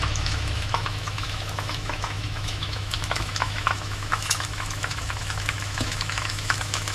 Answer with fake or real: fake